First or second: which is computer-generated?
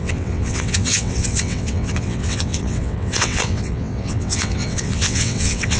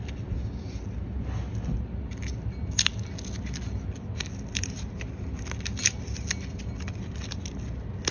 first